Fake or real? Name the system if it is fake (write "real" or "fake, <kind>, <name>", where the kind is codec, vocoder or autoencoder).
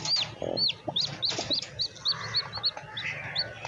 real